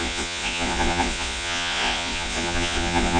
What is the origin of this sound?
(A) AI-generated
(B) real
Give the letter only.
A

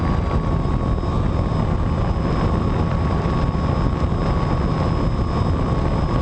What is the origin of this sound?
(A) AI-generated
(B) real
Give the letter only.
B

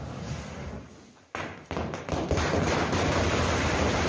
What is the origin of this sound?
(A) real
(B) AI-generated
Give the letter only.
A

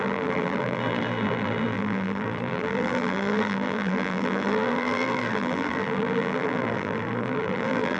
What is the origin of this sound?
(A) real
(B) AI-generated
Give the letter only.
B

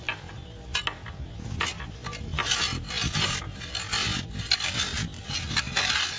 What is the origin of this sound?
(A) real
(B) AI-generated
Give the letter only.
A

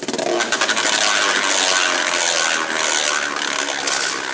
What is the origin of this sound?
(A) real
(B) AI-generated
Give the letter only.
A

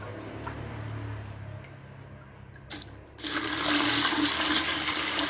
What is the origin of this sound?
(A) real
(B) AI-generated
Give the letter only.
A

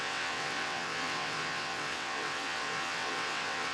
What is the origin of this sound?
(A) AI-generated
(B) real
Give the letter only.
A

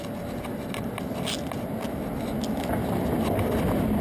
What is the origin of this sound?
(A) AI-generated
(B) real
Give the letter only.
B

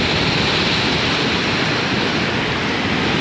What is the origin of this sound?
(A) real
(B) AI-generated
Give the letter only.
A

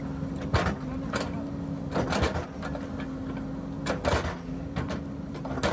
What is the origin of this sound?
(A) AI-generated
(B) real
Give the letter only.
B